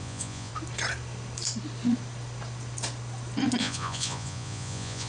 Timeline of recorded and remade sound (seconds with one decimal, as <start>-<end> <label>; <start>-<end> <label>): 0.0-0.5 remade; 0.5-3.6 recorded; 3.6-5.1 remade